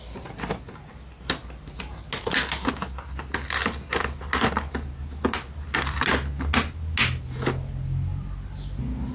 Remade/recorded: recorded